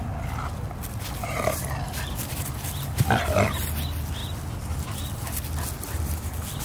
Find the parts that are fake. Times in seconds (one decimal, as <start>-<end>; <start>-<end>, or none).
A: none